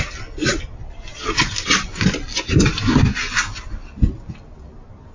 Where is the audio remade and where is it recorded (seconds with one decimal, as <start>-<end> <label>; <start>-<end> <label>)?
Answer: 0.0-5.1 recorded